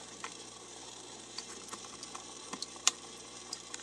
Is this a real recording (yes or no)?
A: no